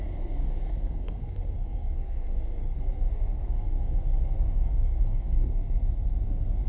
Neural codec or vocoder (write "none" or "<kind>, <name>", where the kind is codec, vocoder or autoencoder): codec, SNAC